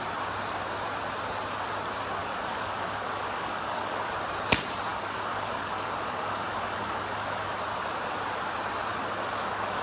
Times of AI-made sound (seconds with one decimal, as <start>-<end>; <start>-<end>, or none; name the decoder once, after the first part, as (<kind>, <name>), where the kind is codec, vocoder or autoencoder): 2.2-4.1 (codec, DAC); 4.9-7.5; 8.9-9.8